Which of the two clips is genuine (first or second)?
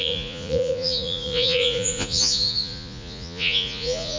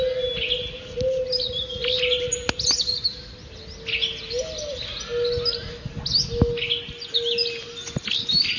second